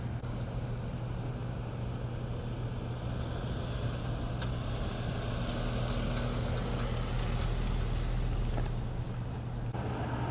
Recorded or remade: recorded